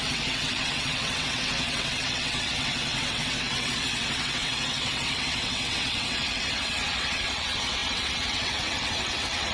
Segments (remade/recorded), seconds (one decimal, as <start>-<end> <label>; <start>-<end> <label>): 0.0-9.5 remade